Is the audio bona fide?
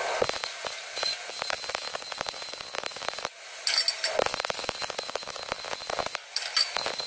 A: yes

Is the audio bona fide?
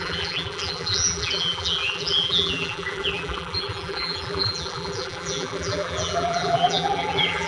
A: no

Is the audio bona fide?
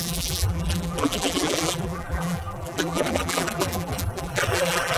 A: no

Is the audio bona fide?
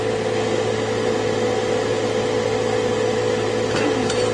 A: yes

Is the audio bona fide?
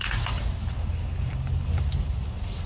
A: yes